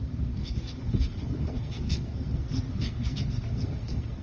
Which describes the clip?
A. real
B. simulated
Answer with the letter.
B